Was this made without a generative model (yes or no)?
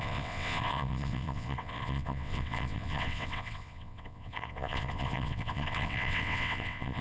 no